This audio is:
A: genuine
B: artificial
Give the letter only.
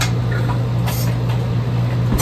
A